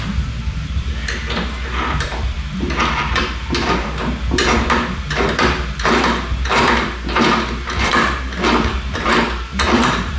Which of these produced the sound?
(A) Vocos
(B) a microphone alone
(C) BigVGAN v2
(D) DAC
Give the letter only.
C